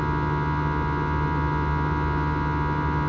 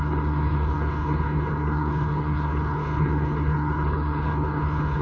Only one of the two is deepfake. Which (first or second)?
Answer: second